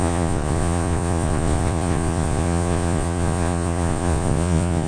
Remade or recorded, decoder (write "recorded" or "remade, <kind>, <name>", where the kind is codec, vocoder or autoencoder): remade, vocoder, Vocos